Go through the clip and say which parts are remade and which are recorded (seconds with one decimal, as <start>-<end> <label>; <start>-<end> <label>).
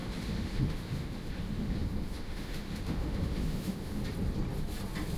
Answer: 0.0-4.0 remade; 4.0-5.2 recorded